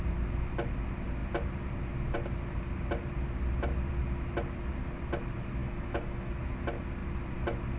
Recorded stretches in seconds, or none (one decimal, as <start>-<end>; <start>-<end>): 0.0-5.6; 6.3-7.8